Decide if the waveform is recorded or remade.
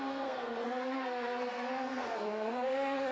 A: remade